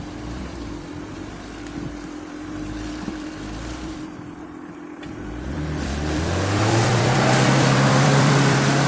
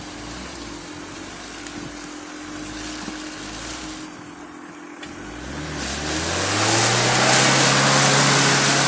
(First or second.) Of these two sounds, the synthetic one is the first